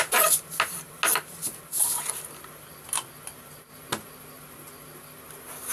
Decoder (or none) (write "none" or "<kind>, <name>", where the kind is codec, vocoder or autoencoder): none